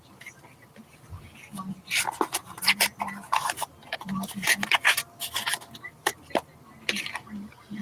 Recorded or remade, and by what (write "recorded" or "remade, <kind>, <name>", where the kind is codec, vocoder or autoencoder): recorded